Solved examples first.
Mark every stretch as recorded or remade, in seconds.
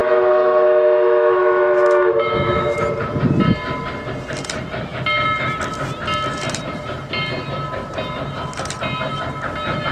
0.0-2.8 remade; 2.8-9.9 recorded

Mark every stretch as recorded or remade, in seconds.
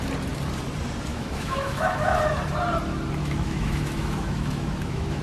0.0-1.1 recorded; 1.1-2.2 remade; 2.2-3.2 recorded; 3.2-5.2 remade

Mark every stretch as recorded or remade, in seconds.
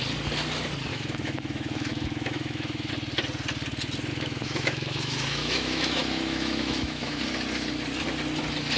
0.0-0.9 recorded; 0.9-2.9 remade; 2.9-4.1 recorded; 4.1-7.2 remade; 7.2-8.8 recorded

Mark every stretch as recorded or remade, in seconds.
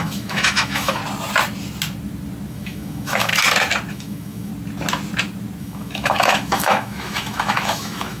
0.0-1.0 remade; 1.0-2.5 recorded; 2.5-3.3 remade; 3.3-3.9 recorded; 3.9-4.5 remade; 4.5-5.6 recorded; 5.6-8.2 remade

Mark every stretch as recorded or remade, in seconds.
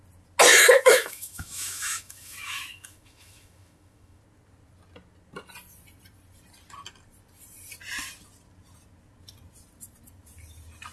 0.0-0.5 recorded; 0.5-4.2 remade; 4.2-10.9 recorded